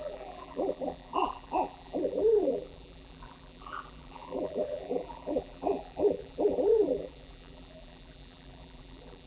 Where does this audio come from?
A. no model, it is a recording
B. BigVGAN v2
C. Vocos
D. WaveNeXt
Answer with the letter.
B